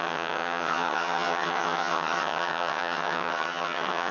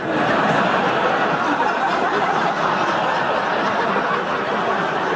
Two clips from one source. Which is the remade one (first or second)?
first